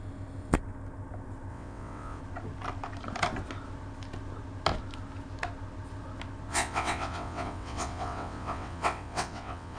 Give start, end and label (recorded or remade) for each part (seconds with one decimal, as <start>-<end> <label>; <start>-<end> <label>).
0.0-1.5 recorded; 1.5-2.2 remade; 2.2-6.5 recorded; 6.5-9.8 remade